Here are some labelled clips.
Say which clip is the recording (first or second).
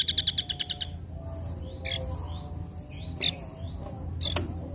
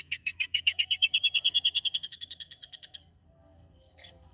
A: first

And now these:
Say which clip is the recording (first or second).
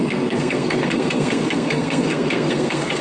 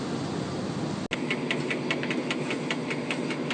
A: second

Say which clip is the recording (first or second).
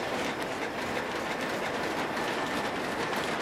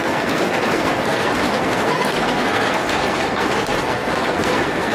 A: first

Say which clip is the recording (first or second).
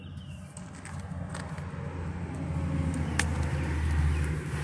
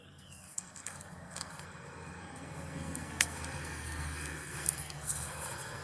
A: first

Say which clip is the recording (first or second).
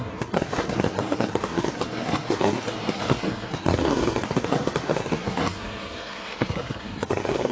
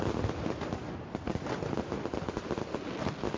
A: second